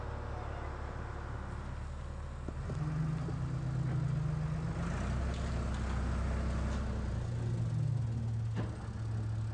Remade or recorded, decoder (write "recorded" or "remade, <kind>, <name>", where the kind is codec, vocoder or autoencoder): recorded